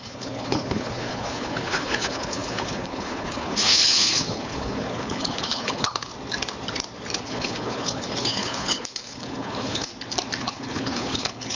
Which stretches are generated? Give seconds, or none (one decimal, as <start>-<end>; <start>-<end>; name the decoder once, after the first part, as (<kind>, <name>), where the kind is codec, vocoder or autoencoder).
0.0-6.1 (codec, HILCodec); 7.2-9.9; 10.4-11.5